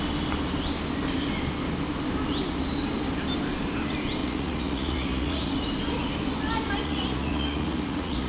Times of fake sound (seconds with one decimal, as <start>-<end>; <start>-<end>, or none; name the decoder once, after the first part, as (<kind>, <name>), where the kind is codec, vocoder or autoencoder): 4.2-5.5 (vocoder, Vocos); 6.8-8.3